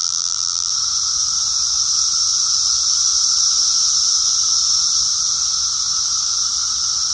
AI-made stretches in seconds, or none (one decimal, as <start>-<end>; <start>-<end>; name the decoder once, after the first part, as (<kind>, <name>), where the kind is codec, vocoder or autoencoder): 0.0-0.7 (vocoder, BigVGAN v2)